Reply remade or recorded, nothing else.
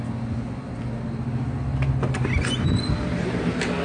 recorded